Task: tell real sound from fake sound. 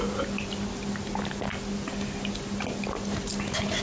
real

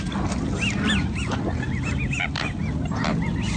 real